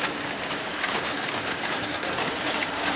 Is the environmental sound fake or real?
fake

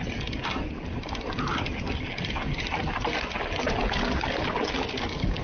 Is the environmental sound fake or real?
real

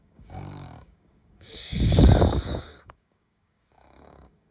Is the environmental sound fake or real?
fake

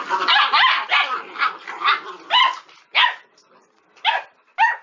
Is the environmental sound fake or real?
real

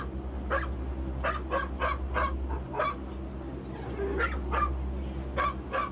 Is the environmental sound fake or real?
real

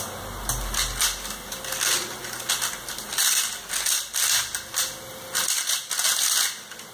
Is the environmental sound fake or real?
real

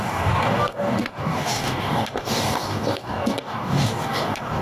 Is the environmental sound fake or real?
fake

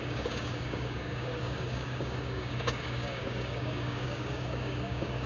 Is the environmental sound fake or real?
fake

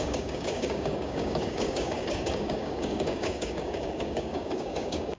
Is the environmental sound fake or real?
fake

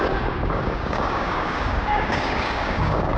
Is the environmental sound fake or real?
fake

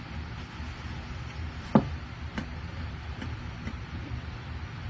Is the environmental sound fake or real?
real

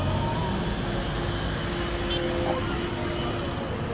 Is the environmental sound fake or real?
real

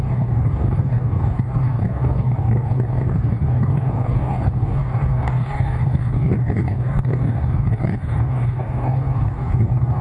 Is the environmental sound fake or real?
fake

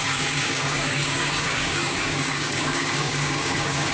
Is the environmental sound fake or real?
fake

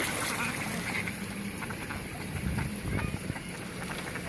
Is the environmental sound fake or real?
real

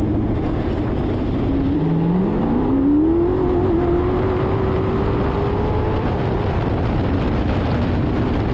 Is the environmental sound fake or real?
real